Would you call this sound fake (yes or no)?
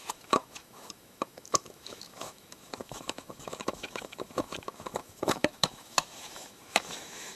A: yes